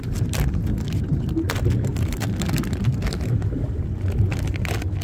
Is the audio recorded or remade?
recorded